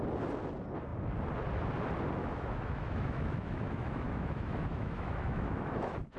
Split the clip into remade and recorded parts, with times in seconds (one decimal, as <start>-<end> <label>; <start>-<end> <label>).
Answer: 0.0-2.2 recorded; 2.2-6.2 remade